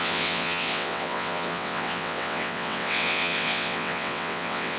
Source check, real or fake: fake